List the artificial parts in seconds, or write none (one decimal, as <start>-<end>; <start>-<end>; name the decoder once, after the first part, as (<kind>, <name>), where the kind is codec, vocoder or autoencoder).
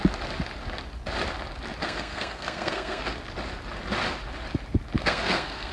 1.8-3.0 (codec, SNAC); 5.0-5.7